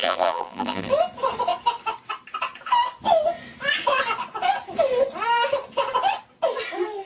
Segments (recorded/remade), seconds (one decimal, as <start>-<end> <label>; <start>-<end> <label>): 0.0-0.9 remade; 0.9-7.1 recorded